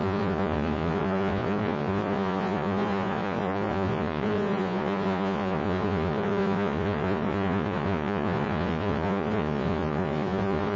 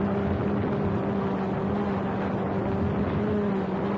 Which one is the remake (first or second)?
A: first